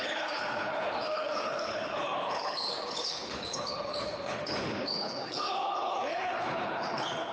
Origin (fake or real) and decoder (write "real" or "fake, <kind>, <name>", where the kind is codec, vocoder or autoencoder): fake, codec, HILCodec